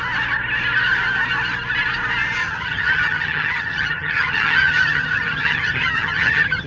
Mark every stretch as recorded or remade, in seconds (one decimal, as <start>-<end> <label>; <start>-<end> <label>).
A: 0.0-2.4 recorded; 2.4-6.7 remade